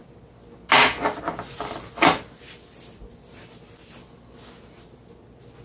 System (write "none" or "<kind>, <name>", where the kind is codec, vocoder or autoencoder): none